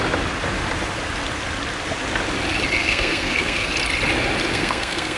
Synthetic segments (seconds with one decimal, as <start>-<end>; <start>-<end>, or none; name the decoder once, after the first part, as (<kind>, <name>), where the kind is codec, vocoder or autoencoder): 2.8-3.7 (codec, SNAC); 4.5-5.2